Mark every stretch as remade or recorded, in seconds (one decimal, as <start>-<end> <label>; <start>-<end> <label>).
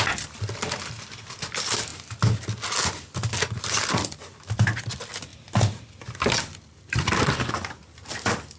0.0-1.9 remade; 1.9-3.6 recorded; 3.6-8.6 remade